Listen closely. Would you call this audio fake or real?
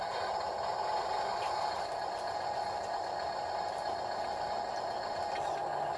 real